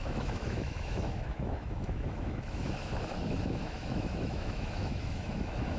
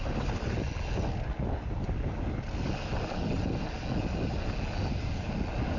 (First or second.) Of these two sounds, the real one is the second